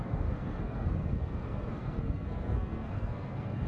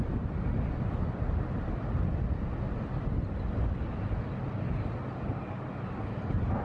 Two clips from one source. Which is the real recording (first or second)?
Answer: second